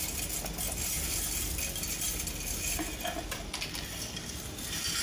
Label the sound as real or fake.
real